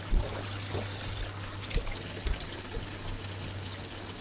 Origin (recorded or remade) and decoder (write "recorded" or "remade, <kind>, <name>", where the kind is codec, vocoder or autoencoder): recorded